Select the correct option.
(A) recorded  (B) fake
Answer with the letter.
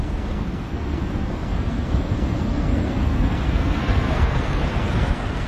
B